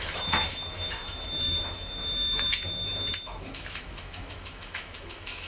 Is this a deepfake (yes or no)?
yes